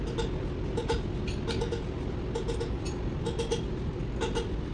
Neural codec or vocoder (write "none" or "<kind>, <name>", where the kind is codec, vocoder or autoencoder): none